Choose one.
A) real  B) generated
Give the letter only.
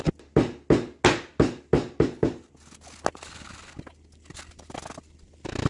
A